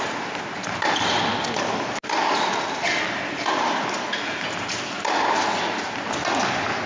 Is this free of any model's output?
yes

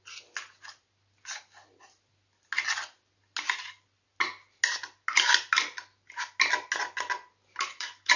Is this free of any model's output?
yes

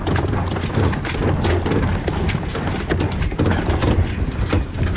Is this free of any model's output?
yes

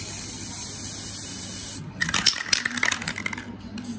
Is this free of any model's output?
yes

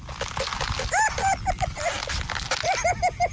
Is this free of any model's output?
yes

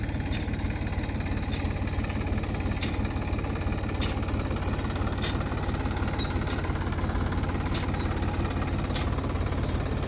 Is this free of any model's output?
yes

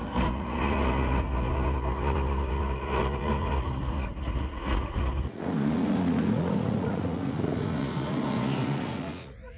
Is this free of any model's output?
no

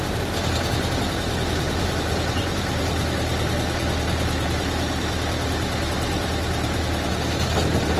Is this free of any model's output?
yes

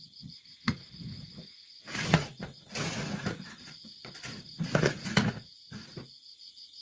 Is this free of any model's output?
no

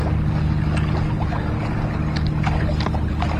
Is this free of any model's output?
yes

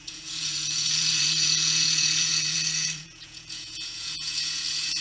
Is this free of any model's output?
no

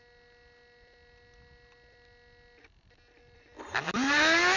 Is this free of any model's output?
yes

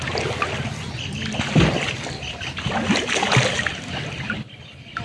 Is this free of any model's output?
yes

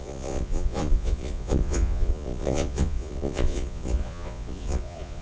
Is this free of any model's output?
no